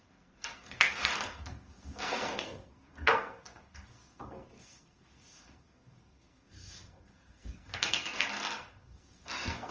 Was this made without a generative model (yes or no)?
no